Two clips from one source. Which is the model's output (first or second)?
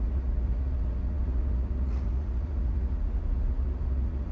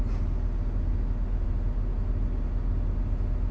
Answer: first